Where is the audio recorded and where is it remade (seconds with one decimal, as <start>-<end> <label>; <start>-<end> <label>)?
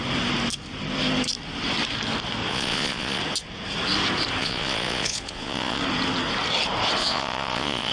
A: 0.0-2.5 recorded; 2.5-3.2 remade; 3.2-4.4 recorded; 4.4-5.8 remade; 5.8-7.0 recorded; 7.0-7.9 remade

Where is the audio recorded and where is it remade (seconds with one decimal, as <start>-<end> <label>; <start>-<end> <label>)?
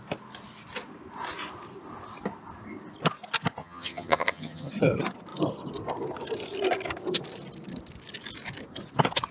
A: 0.0-3.6 recorded; 3.6-4.7 remade; 4.7-9.3 recorded